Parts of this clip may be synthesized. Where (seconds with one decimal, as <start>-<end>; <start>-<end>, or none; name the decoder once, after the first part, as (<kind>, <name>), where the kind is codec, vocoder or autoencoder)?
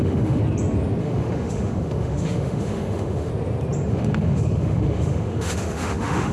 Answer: 0.0-0.4 (autoencoder, DAC-VAE); 1.0-3.3; 3.9-6.3